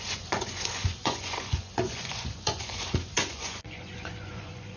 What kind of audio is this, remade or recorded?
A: remade